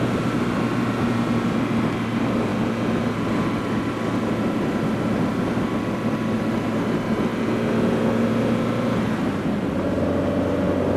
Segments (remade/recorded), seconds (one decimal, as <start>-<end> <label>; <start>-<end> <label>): 0.0-11.0 recorded